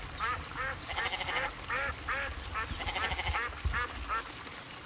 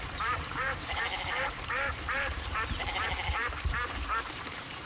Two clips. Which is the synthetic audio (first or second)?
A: second